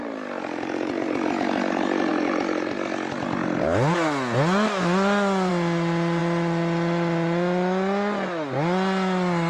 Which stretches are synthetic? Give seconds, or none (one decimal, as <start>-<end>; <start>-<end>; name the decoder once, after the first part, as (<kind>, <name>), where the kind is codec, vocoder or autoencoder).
none